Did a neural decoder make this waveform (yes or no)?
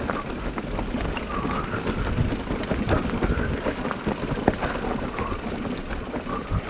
no